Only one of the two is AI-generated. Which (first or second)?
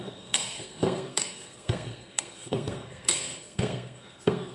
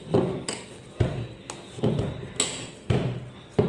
first